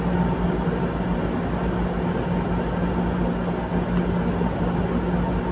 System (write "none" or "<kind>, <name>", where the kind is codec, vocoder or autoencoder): none